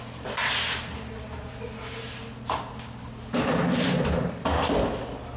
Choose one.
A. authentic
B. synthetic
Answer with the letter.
A